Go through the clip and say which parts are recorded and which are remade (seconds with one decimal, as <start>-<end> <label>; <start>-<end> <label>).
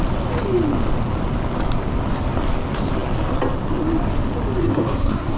0.0-4.6 recorded; 4.6-5.4 remade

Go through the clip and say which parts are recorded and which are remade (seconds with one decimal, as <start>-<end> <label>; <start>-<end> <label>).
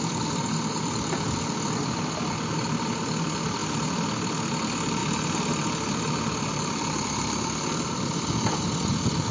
0.0-9.3 remade